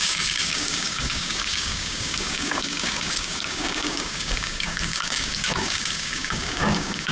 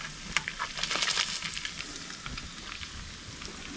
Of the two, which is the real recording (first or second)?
second